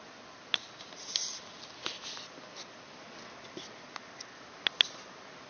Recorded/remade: recorded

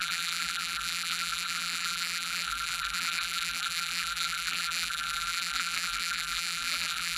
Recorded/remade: remade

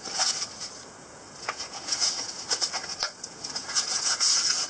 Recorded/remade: remade